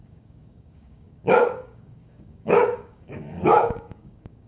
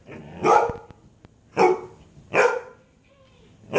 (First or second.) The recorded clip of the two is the second